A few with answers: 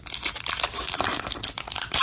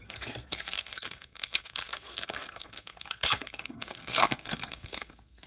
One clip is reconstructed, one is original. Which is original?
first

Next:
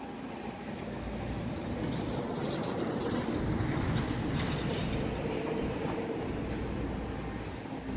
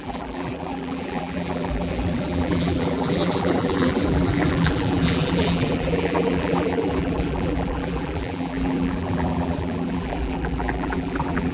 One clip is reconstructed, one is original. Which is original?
first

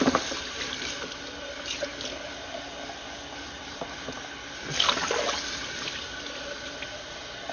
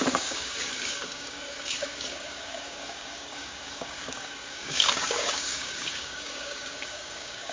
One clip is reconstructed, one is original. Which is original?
first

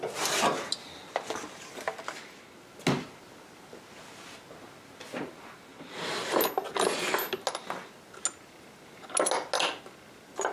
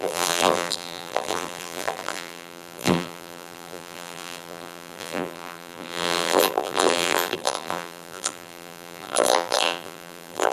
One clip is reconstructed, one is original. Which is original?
first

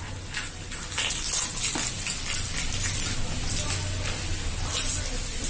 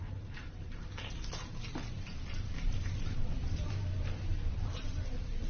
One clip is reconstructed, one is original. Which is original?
first